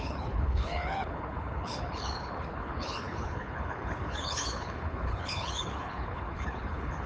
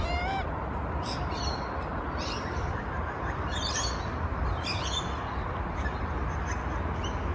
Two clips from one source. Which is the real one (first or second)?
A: second